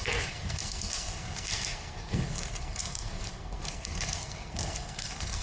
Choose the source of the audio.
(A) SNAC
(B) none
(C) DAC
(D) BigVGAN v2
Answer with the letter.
A